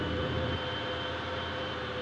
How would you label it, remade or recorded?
remade